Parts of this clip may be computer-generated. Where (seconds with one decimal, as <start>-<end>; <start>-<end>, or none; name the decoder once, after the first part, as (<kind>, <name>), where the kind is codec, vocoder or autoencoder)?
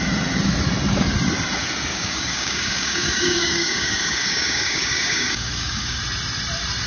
1.9-6.0 (codec, DAC)